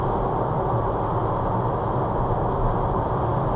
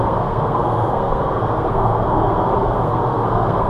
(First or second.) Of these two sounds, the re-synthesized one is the second